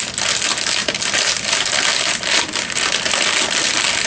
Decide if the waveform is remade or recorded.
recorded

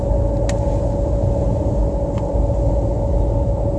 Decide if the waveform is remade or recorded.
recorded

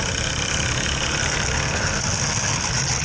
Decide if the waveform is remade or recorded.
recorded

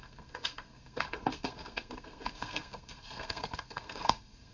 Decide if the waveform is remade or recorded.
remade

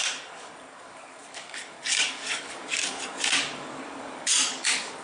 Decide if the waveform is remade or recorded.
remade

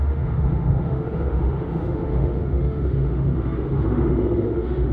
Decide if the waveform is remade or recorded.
remade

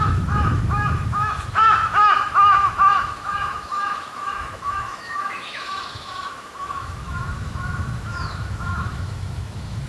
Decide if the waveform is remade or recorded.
remade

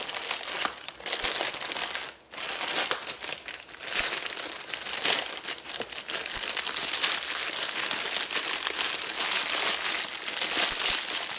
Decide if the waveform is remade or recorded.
recorded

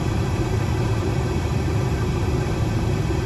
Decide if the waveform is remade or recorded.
remade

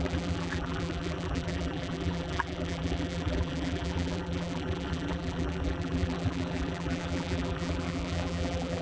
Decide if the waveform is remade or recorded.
remade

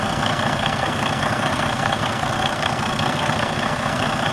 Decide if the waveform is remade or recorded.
remade